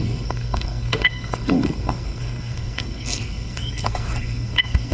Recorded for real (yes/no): no